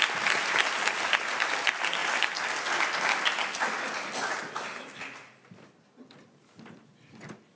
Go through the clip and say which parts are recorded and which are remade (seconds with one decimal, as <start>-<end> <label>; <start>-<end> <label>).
0.0-7.6 recorded